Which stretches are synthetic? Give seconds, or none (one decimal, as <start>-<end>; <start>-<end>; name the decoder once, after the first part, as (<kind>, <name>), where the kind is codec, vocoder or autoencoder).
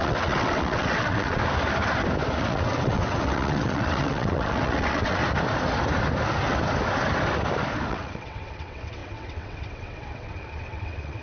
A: 0.0-1.4 (vocoder, WaveNeXt); 2.4-5.2; 7.9-11.2